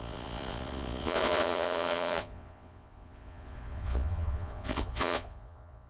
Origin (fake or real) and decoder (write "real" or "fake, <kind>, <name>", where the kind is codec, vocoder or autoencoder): fake, vocoder, Vocos